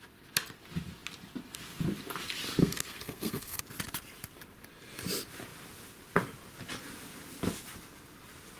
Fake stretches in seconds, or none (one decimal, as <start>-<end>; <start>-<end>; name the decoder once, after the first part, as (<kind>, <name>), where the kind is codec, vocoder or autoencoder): 2.6-3.6 (codec, SNAC)